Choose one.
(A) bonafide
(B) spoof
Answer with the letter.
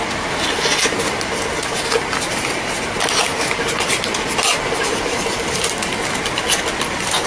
A